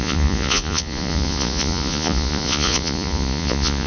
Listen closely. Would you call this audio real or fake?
fake